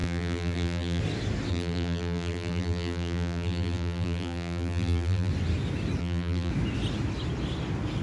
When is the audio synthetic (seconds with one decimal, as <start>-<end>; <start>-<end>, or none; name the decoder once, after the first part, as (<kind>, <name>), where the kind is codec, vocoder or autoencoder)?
0.0-1.0 (vocoder, BigVGAN v2); 1.5-5.3; 6.0-6.5